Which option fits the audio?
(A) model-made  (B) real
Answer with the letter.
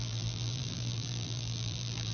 A